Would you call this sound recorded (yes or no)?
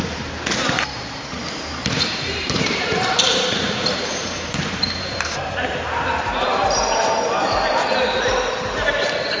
no